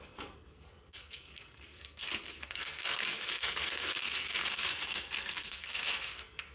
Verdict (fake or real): fake